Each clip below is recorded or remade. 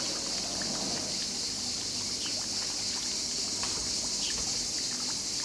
recorded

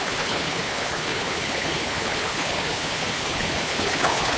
remade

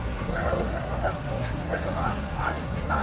remade